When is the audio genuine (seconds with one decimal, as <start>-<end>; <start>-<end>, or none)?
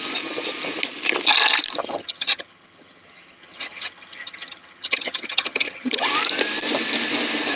0.0-1.8; 6.1-7.6